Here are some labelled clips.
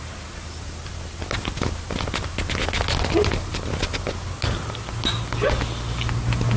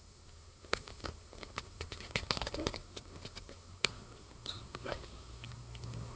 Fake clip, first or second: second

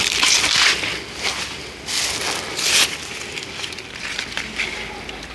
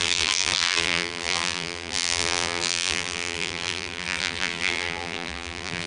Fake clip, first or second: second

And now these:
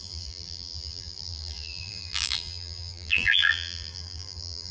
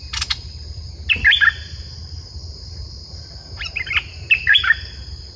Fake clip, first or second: first